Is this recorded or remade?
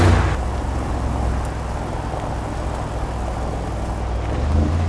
recorded